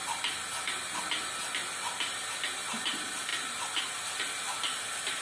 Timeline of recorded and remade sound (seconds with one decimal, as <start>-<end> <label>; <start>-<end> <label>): 0.0-5.2 recorded